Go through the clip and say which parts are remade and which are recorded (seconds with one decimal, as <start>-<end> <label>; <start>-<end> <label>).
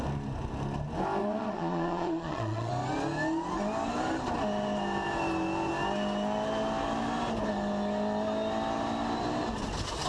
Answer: 0.0-1.2 recorded; 1.2-2.7 remade; 2.7-10.1 recorded